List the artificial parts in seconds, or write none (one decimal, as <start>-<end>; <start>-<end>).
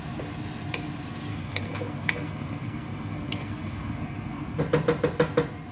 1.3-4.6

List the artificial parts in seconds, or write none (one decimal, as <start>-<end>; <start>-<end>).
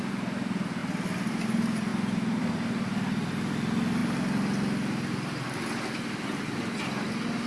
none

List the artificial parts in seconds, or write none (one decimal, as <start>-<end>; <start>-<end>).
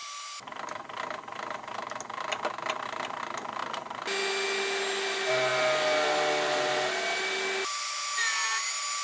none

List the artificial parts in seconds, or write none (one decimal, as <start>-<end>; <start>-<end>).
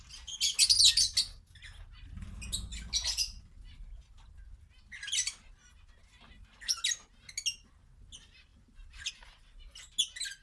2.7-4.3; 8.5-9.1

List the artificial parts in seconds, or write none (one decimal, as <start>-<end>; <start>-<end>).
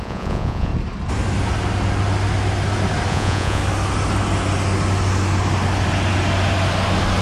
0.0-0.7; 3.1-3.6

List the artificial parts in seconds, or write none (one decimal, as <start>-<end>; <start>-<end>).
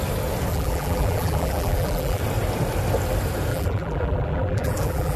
0.5-2.2; 3.5-5.2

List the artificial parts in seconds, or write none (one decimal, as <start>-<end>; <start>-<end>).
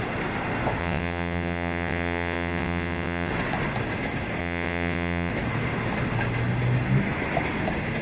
0.8-3.3; 4.4-5.3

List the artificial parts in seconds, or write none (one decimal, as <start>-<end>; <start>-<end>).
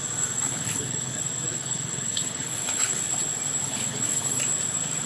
0.5-1.1; 1.5-3.0; 3.6-4.2